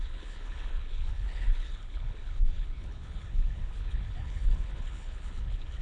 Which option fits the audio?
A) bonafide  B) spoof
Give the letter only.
B